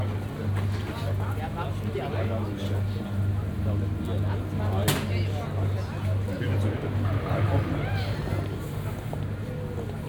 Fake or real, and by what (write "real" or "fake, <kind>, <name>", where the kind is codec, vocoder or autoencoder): real